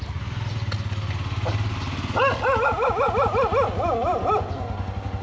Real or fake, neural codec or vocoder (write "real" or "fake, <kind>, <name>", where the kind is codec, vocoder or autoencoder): real